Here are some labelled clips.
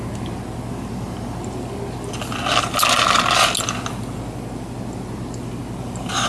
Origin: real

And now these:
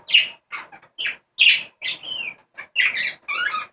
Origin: real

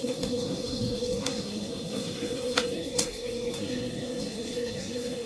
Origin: fake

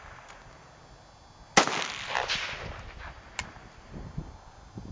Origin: real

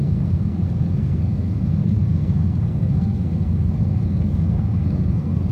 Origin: fake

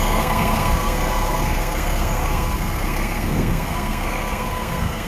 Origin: fake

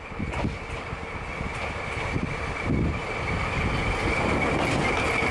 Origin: real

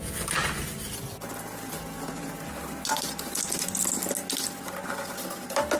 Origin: real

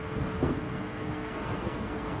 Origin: fake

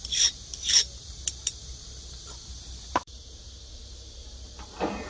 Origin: real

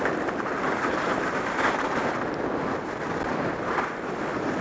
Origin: real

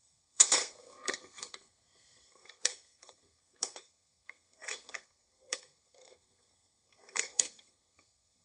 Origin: fake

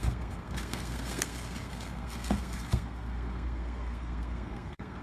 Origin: fake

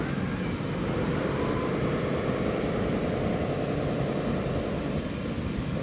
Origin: real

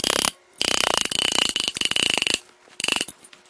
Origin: real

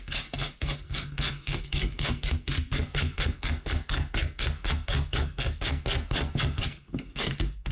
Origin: fake